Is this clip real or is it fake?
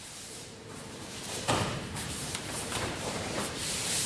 fake